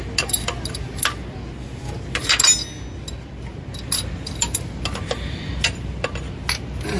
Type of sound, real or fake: real